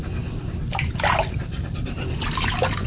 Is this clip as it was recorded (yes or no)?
yes